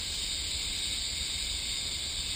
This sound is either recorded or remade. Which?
recorded